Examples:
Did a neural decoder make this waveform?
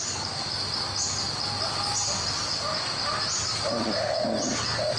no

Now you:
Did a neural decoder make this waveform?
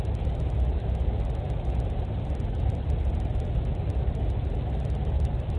no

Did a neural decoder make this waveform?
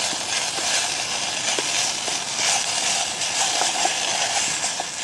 no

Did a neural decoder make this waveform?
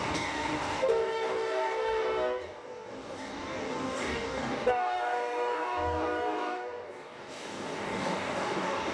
yes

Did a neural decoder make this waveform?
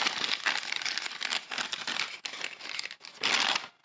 no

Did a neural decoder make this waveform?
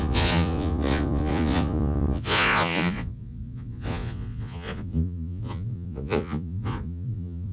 yes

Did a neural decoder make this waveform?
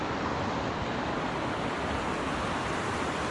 no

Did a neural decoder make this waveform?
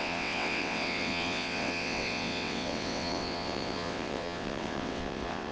yes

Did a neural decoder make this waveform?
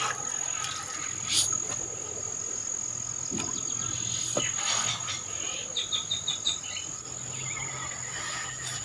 no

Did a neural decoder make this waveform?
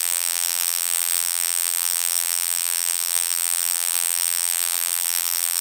yes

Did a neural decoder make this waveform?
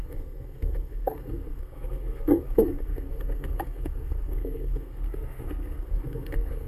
yes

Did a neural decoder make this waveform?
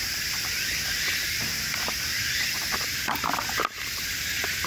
no